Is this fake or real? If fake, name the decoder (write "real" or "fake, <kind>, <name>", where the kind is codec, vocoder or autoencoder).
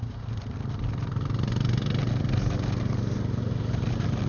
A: real